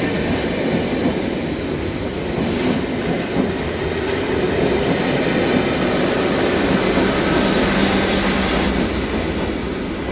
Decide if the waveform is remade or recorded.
recorded